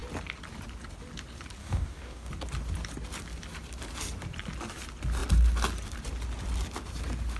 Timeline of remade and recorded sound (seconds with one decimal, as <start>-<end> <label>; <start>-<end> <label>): 0.0-1.6 recorded; 1.6-2.3 remade; 2.3-7.4 recorded